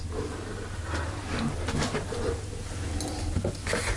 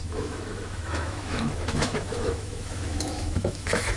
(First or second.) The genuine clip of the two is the first